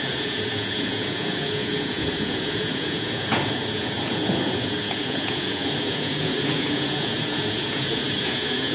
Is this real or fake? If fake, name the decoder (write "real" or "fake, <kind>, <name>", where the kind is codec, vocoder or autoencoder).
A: fake, vocoder, Vocos